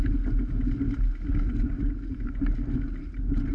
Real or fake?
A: real